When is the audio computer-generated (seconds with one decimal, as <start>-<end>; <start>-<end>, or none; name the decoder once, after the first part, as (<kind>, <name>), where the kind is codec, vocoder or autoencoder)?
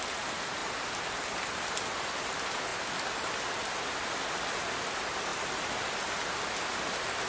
none